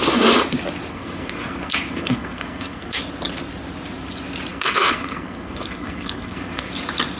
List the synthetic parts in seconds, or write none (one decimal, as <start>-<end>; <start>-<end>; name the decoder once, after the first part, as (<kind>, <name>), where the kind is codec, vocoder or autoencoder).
0.9-3.0 (codec, SNAC); 4.5-6.7